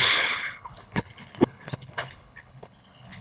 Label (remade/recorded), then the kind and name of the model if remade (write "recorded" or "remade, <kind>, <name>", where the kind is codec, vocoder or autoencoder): remade, codec, HILCodec